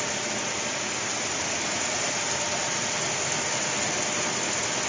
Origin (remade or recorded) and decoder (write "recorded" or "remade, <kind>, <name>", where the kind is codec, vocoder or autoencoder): recorded